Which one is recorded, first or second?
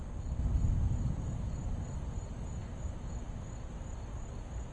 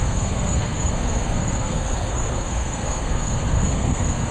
first